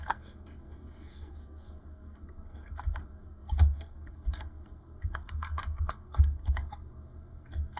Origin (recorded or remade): remade